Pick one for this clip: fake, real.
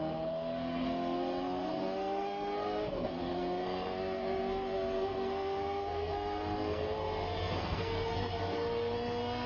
fake